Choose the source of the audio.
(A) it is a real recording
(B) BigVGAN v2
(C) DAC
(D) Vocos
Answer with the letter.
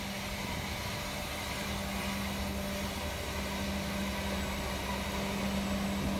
A